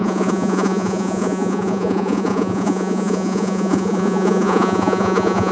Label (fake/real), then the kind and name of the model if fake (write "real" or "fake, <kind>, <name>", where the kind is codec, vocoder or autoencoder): fake, vocoder, Vocos